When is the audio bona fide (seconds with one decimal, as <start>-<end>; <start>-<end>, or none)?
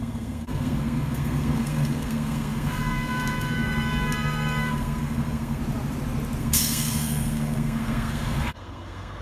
5.6-6.4